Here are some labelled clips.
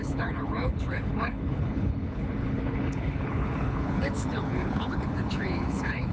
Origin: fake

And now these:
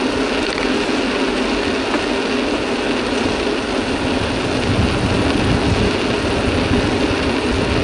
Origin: real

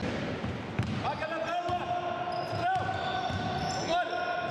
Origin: real